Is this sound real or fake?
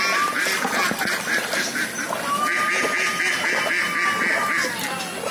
real